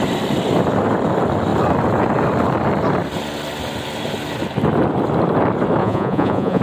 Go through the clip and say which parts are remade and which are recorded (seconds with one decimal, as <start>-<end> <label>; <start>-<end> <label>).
0.0-5.8 recorded; 5.8-6.6 remade